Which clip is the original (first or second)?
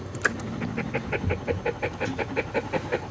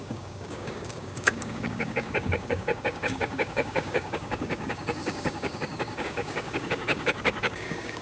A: first